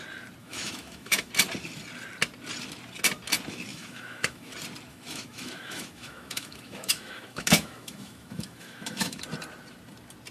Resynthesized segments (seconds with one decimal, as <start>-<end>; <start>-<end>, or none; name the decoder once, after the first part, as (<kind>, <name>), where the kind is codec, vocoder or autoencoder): 0.4-1.3 (autoencoder, DAC-VAE); 3.7-4.5; 4.9-9.2